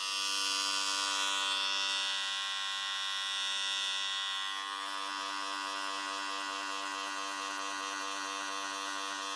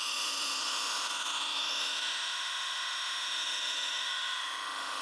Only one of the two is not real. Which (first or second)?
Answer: second